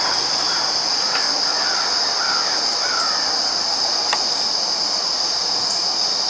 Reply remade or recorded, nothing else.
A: recorded